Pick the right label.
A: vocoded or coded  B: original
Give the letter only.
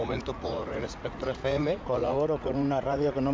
A